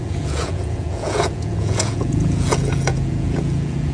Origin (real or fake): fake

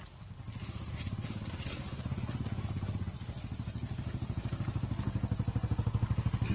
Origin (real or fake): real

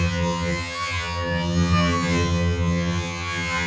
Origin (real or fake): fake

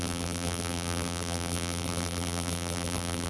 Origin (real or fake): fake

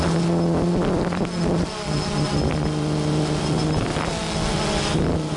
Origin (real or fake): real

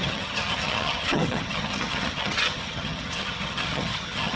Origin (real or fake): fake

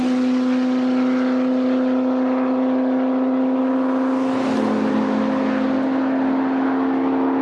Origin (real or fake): real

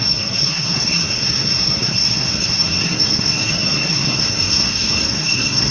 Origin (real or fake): fake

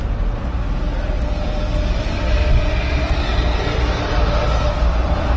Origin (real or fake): real